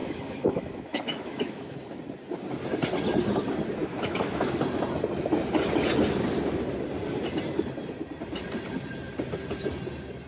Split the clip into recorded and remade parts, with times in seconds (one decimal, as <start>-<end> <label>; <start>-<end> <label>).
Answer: 0.0-2.0 remade; 2.0-3.8 recorded; 3.8-4.5 remade; 4.5-10.3 recorded